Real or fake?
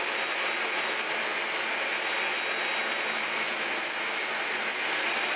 real